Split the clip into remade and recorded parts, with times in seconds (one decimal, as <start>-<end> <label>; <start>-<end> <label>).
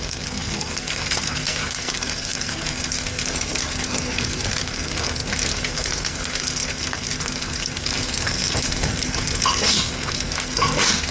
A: 0.0-11.1 remade